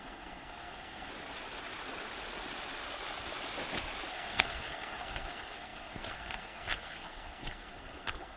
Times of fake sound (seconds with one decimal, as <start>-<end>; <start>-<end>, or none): 0.0-1.1; 4.1-8.4